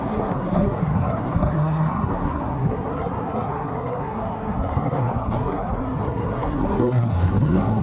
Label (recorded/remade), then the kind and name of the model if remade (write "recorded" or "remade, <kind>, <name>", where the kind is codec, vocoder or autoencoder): remade, codec, SNAC